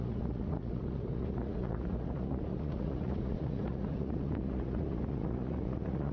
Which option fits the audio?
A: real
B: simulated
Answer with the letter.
B